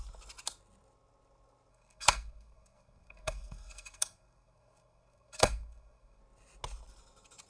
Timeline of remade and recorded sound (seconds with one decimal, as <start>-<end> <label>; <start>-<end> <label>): 0.0-1.7 recorded; 1.7-6.2 remade; 6.2-7.5 recorded